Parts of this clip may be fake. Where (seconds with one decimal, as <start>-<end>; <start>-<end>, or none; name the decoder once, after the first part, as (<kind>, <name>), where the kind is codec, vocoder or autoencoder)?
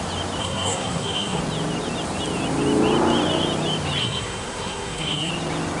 0.4-1.4 (codec, SNAC); 4.0-5.3